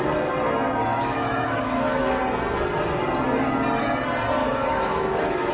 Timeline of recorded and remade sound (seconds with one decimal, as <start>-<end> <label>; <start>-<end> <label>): 0.0-0.9 recorded; 0.9-2.2 remade; 2.2-4.4 recorded; 4.4-5.5 remade